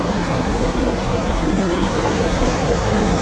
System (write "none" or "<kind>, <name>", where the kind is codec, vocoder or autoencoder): codec, SNAC